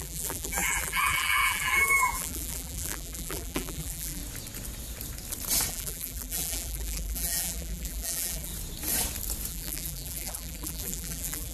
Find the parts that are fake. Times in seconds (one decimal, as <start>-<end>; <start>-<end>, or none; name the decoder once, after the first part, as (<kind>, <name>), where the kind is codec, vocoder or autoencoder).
0.0-4.2 (vocoder, BigVGAN v2); 5.7-8.5; 9.5-11.5